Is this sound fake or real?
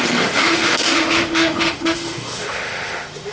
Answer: fake